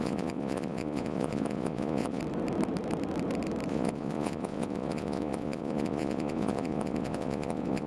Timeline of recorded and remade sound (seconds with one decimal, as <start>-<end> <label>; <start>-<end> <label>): 0.0-2.2 remade; 2.2-3.7 recorded; 3.7-7.9 remade